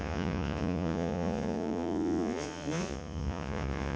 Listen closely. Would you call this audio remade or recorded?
remade